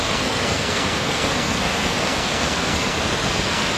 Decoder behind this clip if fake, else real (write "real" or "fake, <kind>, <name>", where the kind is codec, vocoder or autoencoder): fake, codec, SNAC